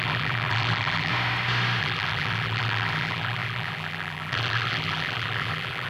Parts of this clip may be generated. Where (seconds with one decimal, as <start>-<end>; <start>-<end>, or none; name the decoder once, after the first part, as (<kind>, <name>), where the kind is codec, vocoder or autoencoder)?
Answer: 0.0-1.1 (vocoder, BigVGAN v2); 1.8-5.9